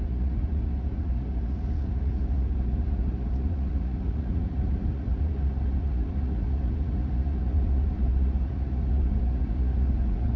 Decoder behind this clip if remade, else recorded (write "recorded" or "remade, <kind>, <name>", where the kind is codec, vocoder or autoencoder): remade, vocoder, Vocos